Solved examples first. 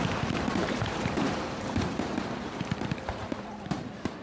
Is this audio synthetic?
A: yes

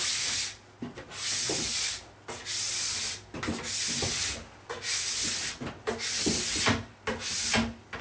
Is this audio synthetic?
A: no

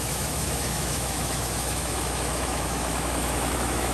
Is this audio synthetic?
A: yes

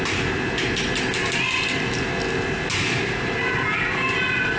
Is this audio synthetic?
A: no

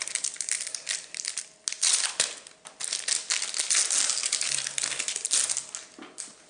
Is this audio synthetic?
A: no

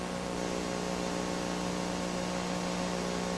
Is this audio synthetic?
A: no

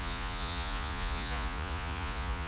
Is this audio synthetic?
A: yes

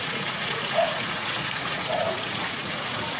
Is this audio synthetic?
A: yes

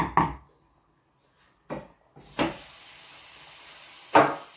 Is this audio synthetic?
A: no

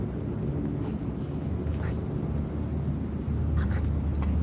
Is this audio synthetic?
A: no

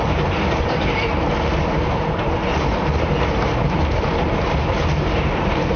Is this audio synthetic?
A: yes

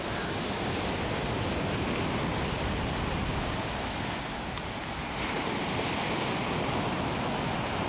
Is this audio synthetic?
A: no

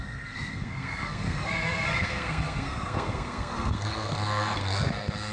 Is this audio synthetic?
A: yes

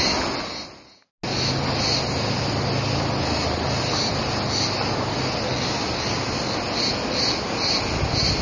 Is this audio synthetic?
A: no